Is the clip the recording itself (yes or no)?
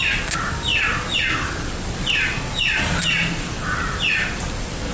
yes